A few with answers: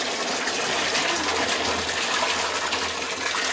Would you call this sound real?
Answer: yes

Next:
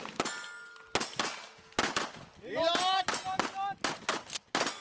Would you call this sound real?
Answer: yes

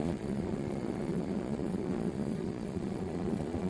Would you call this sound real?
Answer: no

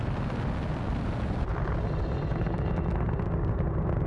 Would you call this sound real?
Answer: yes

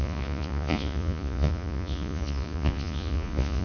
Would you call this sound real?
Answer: no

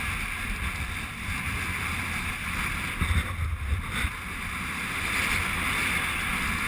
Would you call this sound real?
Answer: yes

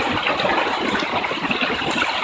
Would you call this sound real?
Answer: yes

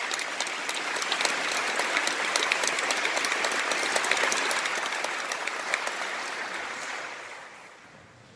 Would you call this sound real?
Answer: yes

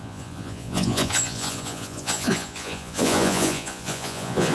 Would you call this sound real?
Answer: no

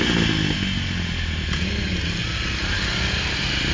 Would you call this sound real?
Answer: yes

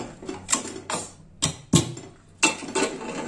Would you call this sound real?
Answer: yes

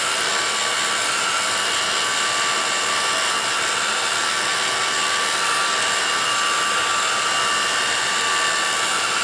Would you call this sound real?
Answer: yes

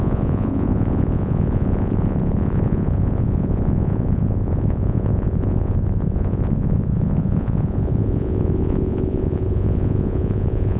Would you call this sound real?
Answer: no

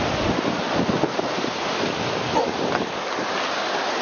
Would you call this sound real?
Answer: yes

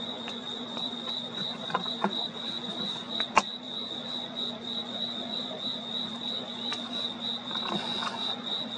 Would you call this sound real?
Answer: no